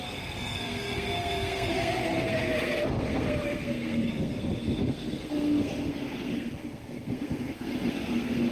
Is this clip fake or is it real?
fake